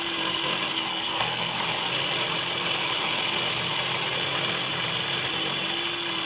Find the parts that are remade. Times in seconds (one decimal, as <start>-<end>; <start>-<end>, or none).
0.9-1.6

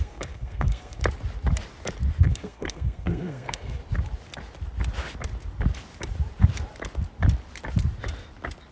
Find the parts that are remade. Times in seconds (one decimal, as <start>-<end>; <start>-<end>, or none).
0.0-1.0; 2.2-3.8